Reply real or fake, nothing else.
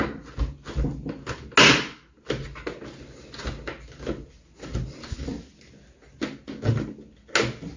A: real